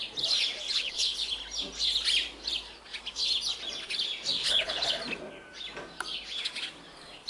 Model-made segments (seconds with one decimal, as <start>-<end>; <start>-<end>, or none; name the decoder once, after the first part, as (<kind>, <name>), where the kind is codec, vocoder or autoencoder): 0.7-1.3 (codec, HILCodec); 4.4-5.0